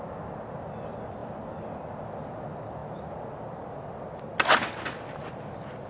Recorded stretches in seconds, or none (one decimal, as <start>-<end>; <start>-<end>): 0.0-5.9